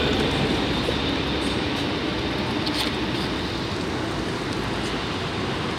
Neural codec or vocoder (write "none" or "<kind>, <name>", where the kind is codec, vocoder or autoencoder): none